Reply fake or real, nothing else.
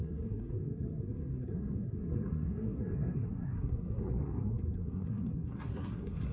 fake